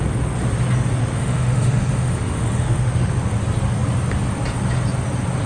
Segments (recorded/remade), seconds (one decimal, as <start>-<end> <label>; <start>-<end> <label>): 0.0-1.0 recorded; 1.0-3.1 remade; 3.1-5.5 recorded